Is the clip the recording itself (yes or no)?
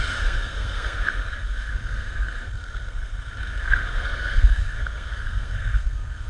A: no